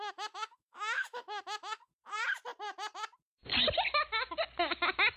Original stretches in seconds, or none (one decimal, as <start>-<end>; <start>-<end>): 1.9-5.2